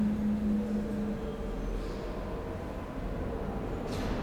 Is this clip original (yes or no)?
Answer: yes